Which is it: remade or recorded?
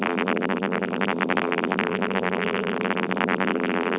remade